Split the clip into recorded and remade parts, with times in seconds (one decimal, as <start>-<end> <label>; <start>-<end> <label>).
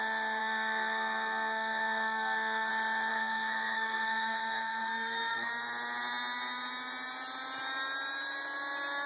0.0-0.4 recorded; 0.4-2.7 remade; 2.7-3.1 recorded; 3.1-5.5 remade; 5.5-9.1 recorded